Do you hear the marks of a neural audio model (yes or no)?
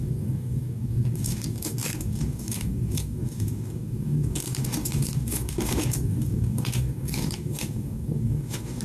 yes